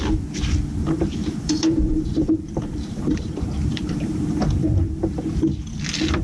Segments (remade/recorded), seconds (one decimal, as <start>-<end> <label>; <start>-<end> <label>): 0.0-1.2 recorded; 1.2-4.9 remade; 4.9-6.2 recorded